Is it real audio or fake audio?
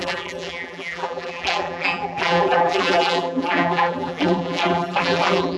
fake